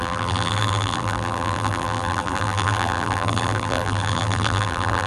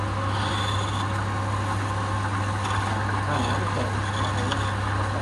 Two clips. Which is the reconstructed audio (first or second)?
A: first